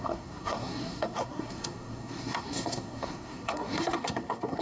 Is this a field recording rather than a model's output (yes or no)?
no